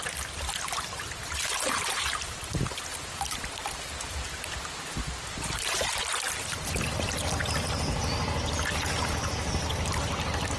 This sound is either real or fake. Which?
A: real